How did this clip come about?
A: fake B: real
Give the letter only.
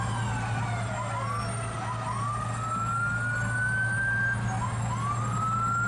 B